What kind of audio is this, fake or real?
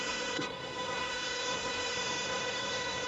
fake